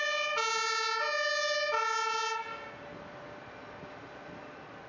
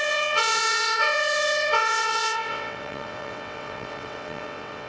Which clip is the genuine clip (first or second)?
first